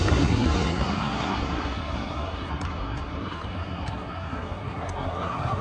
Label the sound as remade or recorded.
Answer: remade